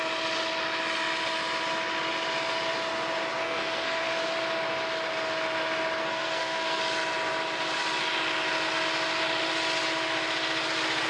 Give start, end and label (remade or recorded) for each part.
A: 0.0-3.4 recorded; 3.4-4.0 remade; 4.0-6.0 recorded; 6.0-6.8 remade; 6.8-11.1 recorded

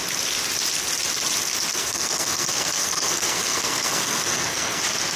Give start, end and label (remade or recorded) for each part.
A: 0.0-1.7 recorded; 1.7-4.8 remade; 4.8-5.2 recorded

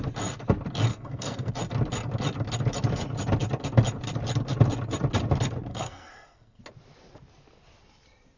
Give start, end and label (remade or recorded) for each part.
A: 0.0-0.9 recorded; 0.9-1.5 remade; 1.5-5.7 recorded; 5.7-6.6 remade; 6.6-8.4 recorded

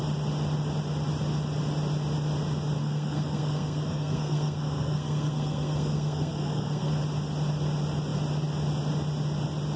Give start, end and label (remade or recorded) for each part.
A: 0.0-2.8 recorded; 2.8-6.9 remade; 6.9-9.8 recorded